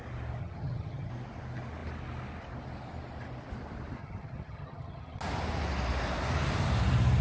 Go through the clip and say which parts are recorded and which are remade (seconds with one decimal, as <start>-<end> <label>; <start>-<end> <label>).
0.0-0.4 recorded; 0.4-1.1 remade; 1.1-4.0 recorded; 4.0-5.2 remade; 5.2-7.2 recorded